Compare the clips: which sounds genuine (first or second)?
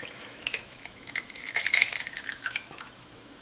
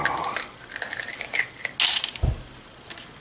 second